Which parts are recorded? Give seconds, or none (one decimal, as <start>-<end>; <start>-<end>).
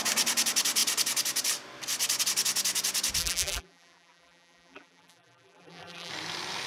0.0-3.2; 6.1-6.7